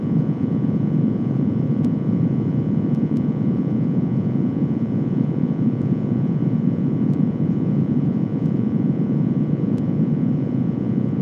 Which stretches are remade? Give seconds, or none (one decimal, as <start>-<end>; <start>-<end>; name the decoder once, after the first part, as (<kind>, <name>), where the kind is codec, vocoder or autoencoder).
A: 0.0-11.2 (vocoder, Vocos)